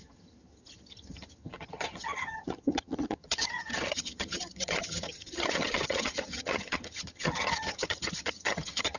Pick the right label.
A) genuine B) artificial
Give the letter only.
B